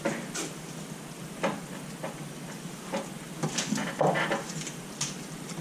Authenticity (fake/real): real